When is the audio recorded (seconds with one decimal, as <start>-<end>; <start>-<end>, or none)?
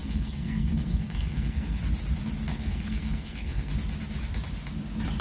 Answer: 1.8-2.5; 3.7-5.2